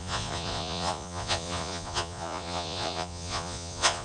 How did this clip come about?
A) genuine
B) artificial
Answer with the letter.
B